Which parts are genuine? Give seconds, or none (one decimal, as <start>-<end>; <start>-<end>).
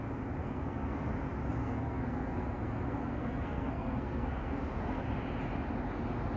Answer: 0.0-0.4; 1.1-1.6; 5.0-6.4